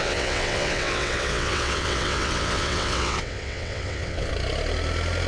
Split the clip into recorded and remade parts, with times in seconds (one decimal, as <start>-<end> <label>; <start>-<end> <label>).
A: 0.0-4.3 remade; 4.3-5.3 recorded